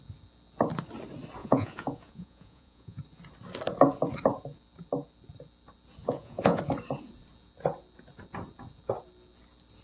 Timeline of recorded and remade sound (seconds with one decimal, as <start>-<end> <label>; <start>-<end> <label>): 0.0-1.4 recorded; 1.4-3.0 remade; 3.0-6.0 recorded; 6.0-6.6 remade; 6.6-9.8 recorded